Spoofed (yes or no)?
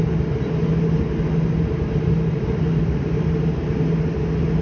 no